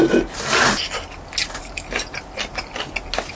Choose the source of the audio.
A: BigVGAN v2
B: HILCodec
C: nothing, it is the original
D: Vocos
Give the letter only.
C